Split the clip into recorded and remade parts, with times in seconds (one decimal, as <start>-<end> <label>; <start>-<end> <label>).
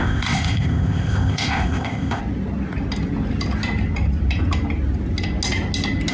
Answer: 0.0-2.2 remade; 2.2-6.1 recorded